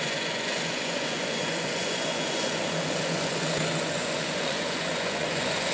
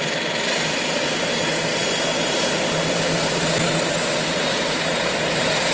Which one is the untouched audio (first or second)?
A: second